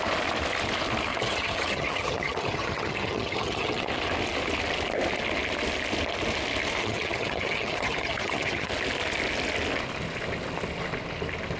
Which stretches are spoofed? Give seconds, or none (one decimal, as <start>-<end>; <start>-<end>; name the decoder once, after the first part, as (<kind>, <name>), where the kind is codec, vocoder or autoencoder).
1.1-3.9 (vocoder, HiFi-GAN); 6.8-8.7